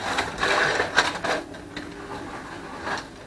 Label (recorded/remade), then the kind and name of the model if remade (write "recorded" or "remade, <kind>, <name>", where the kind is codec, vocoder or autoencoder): recorded